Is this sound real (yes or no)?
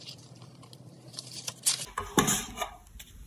no